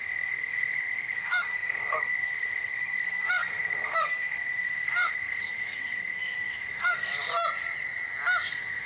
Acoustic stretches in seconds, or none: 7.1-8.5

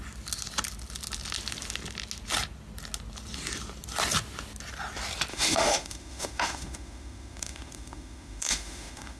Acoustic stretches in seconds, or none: 0.0-5.3